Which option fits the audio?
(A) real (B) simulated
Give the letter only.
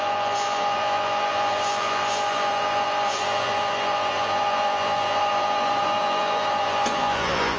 B